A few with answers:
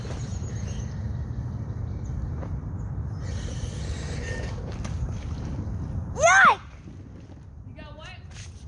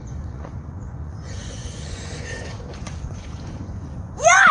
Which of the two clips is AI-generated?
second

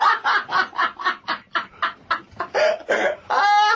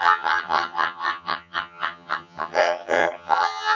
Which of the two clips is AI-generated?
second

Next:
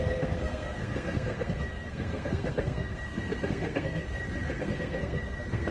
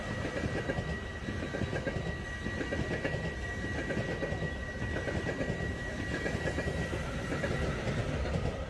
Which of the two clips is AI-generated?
first